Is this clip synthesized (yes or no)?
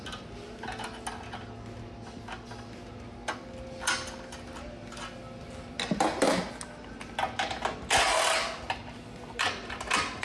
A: no